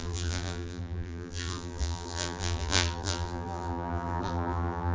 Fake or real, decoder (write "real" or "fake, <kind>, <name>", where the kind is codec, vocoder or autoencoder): fake, vocoder, BigVGAN v2